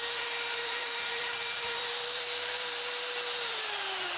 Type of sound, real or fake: fake